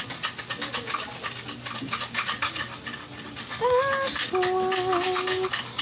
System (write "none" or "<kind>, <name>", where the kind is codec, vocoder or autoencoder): none